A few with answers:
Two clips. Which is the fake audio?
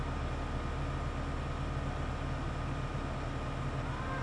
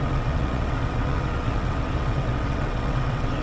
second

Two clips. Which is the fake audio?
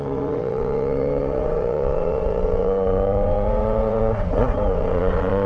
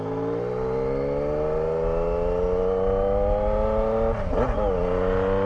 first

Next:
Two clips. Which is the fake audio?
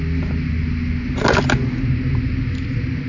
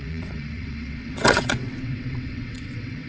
second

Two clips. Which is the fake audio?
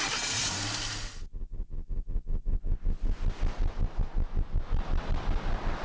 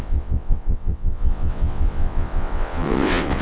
second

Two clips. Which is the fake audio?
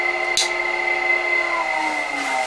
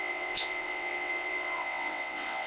second